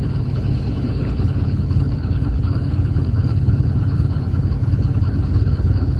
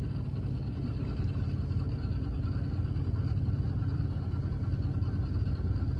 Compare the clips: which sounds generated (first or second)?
first